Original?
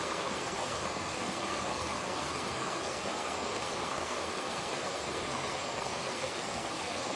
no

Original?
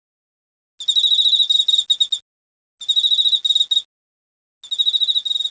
yes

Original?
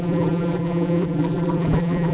no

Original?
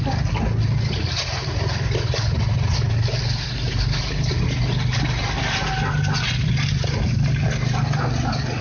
yes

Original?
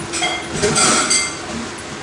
yes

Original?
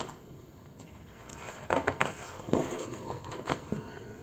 no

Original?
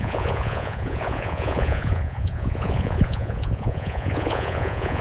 no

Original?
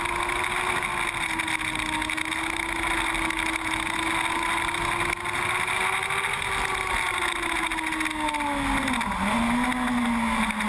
yes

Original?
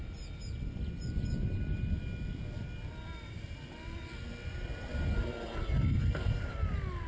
yes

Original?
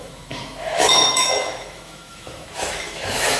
no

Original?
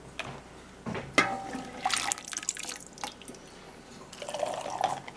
yes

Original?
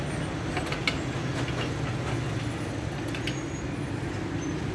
yes